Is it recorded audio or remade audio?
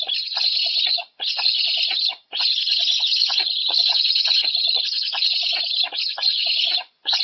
remade